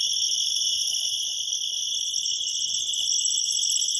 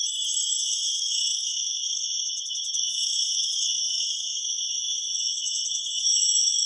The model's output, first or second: second